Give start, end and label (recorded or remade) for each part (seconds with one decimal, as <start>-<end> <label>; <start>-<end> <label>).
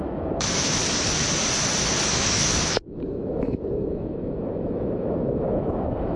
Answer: 0.0-0.8 remade; 0.8-2.1 recorded; 2.1-6.2 remade